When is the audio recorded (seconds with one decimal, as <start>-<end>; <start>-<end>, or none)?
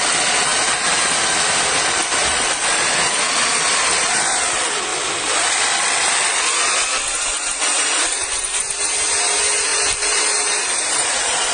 0.0-9.7